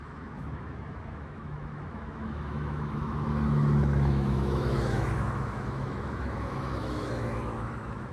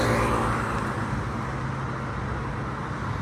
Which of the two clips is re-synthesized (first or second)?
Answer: first